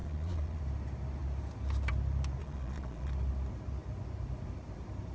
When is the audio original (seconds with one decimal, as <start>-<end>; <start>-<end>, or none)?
0.6-2.4; 3.1-5.1